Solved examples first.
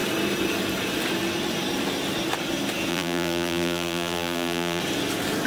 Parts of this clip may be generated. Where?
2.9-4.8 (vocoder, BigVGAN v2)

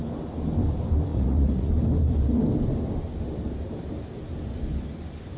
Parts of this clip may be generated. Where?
1.1-1.7 (vocoder, Vocos)

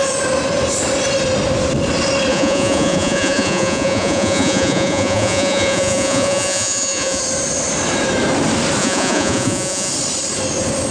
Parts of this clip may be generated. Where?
2.3-7.2 (vocoder, Vocos); 8.8-9.9